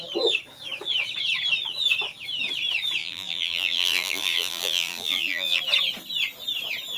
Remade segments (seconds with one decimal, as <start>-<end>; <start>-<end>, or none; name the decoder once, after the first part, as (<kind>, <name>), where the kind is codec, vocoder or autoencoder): 3.0-5.6 (vocoder, BigVGAN v2)

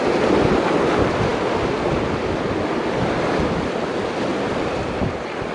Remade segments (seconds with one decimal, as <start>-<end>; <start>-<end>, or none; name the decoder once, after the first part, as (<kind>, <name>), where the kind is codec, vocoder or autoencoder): none

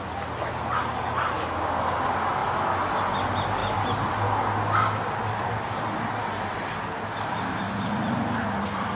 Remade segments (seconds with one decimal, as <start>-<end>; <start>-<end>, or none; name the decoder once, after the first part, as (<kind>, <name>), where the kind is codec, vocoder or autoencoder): none

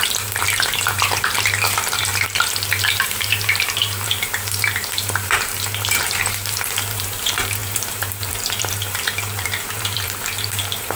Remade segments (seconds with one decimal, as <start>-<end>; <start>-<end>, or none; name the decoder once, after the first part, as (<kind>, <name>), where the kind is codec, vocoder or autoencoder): 0.0-2.1 (vocoder, BigVGAN v2); 2.9-11.0

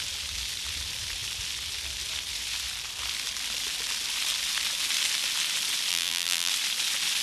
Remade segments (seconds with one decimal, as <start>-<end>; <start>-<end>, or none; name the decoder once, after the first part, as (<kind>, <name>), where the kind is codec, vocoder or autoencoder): 5.9-6.5 (vocoder, BigVGAN v2)

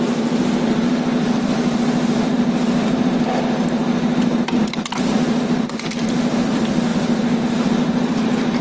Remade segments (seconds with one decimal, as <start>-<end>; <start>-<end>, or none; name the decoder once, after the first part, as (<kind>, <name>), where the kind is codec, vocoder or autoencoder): 0.0-3.8 (vocoder, BigVGAN v2); 4.7-8.6